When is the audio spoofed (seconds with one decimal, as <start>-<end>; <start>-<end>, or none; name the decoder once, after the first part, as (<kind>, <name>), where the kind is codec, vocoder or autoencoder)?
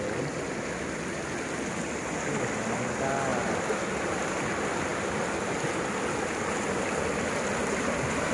none